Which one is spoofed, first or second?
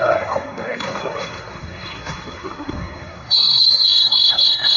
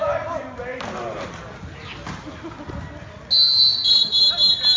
first